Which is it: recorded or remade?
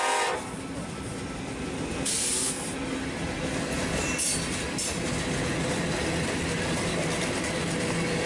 recorded